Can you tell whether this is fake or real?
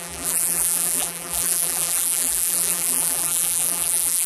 fake